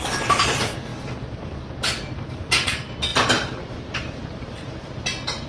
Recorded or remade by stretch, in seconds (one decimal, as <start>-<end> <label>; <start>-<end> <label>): 0.0-3.1 recorded; 3.1-4.9 remade; 4.9-5.5 recorded